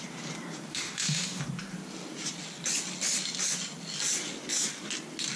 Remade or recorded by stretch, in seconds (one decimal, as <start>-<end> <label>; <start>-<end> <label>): 0.0-0.7 recorded; 0.7-1.4 remade; 1.4-5.4 recorded